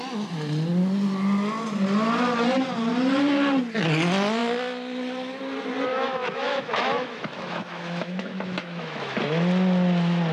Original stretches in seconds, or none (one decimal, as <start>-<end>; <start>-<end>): 0.0-5.9; 9.2-10.3